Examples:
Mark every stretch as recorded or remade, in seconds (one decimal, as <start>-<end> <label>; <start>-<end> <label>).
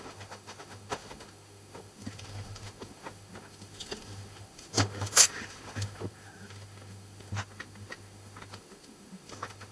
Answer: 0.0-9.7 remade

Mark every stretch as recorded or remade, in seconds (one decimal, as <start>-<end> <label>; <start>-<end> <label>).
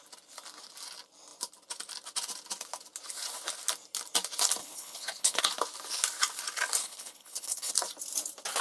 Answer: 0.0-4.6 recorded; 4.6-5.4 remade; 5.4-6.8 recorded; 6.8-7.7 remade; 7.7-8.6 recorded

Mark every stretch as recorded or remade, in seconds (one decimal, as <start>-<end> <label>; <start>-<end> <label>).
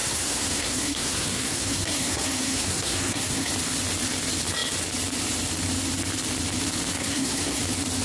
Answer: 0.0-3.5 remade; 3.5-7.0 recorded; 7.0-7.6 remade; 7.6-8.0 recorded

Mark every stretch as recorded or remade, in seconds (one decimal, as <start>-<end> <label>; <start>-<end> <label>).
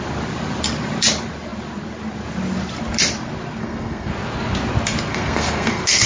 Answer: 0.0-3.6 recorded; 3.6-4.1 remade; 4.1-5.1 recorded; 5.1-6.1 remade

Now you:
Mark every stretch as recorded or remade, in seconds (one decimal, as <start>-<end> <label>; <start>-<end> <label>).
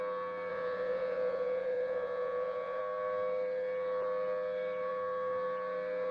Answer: 0.0-0.5 recorded; 0.5-2.8 remade; 2.8-6.1 recorded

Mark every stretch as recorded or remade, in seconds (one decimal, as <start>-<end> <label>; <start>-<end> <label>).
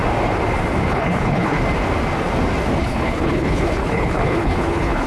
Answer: 0.0-0.9 recorded; 0.9-1.6 remade; 1.6-2.8 recorded; 2.8-5.1 remade